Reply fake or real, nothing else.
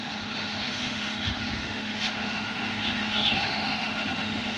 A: fake